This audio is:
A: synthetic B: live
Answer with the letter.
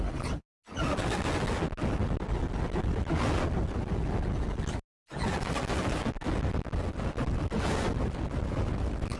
B